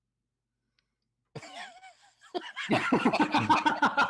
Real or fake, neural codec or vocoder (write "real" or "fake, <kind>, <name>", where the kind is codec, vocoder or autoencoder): real